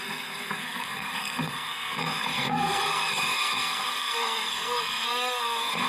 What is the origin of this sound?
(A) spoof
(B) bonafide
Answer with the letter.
A